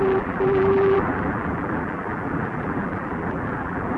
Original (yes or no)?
no